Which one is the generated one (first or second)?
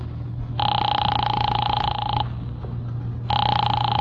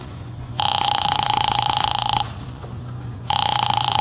second